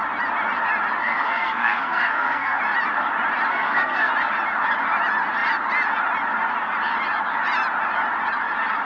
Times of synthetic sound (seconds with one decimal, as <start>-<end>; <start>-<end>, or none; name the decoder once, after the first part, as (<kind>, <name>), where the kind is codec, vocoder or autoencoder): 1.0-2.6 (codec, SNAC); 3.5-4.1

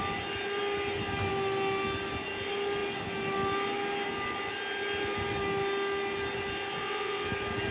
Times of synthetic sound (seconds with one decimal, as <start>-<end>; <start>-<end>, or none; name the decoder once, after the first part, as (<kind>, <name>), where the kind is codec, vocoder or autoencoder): 6.8-7.3 (vocoder, WaveNeXt)

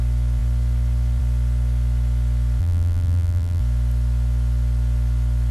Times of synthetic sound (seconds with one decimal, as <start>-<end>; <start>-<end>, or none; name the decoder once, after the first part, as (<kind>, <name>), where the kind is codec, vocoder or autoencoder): 2.6-3.6 (vocoder, BigVGAN v2)

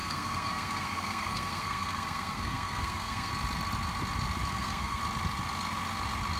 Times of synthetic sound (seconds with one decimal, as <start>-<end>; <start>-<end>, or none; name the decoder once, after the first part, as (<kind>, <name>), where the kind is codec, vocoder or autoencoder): 0.0-3.3 (codec, SNAC); 4.5-5.0

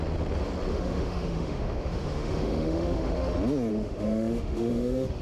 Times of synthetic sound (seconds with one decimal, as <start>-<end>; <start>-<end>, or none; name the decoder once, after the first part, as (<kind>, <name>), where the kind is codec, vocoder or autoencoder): 0.7-3.3 (autoencoder, DAC-VAE); 3.7-5.2

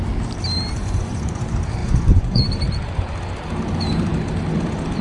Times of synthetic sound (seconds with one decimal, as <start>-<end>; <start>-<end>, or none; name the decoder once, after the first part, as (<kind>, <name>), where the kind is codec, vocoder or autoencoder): 0.8-1.4 (vocoder, Vocos); 1.8-2.5